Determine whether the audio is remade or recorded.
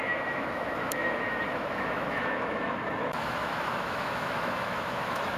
remade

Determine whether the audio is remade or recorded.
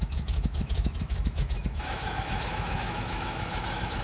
remade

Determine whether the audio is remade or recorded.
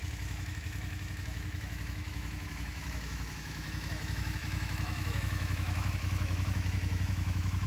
remade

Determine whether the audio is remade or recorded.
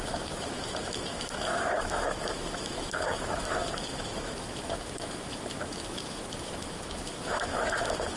remade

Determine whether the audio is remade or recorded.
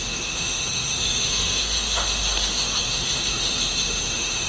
remade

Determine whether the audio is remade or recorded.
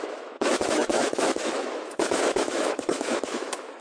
remade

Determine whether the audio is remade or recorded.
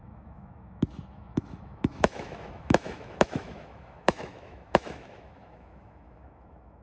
remade